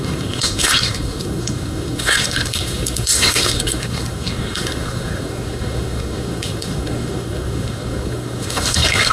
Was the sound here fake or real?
fake